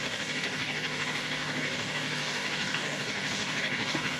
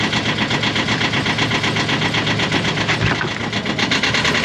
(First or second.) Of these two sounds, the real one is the second